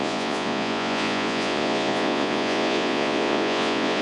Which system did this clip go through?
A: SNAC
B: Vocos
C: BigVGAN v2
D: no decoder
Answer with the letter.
B